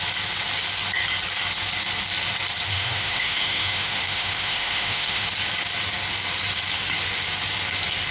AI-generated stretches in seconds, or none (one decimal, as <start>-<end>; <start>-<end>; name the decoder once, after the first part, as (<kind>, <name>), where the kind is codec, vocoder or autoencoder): 2.7-5.3 (autoencoder, DAC-VAE)